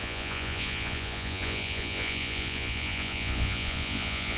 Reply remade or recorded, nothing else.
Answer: remade